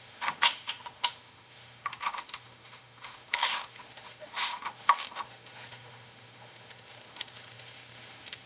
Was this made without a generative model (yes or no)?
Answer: no